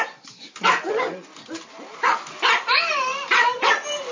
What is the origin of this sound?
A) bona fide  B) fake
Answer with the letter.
B